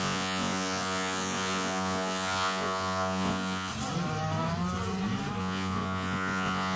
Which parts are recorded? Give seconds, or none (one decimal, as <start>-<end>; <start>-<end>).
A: 3.7-5.4